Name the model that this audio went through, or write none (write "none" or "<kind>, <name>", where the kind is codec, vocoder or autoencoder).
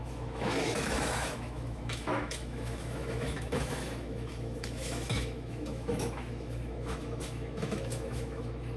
autoencoder, DAC-VAE